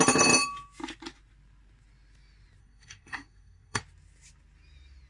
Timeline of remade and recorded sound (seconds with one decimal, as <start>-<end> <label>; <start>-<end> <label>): 0.0-2.6 recorded; 2.6-3.8 remade; 3.8-5.1 recorded